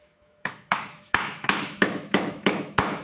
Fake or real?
fake